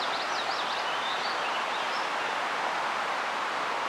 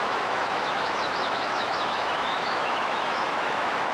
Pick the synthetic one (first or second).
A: second